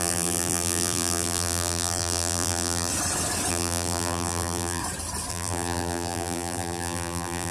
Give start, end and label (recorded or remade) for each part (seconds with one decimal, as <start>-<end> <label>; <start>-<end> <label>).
0.0-2.9 remade; 2.9-3.5 recorded; 3.5-4.8 remade; 4.8-5.3 recorded; 5.3-7.5 remade